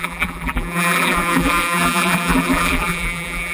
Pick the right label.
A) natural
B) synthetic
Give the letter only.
B